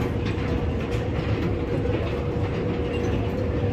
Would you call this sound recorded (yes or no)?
yes